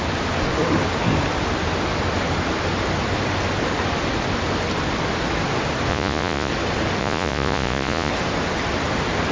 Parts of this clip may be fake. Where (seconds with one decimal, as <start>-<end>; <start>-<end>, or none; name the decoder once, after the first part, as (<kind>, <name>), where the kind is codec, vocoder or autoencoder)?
5.9-6.5 (vocoder, Vocos); 7.0-8.1